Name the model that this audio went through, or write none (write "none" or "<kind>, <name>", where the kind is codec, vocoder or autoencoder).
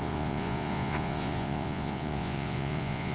vocoder, Vocos